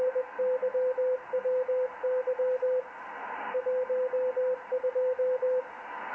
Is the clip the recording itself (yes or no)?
yes